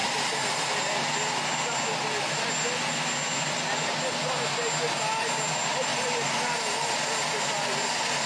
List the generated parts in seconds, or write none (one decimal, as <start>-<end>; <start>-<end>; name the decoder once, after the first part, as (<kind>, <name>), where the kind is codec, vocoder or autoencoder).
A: 0.0-0.8 (vocoder, BigVGAN v2); 5.9-7.0